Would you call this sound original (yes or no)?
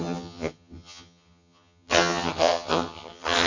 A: no